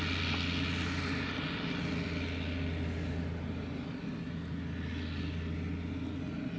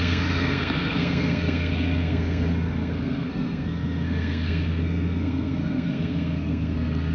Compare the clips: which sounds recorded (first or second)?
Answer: first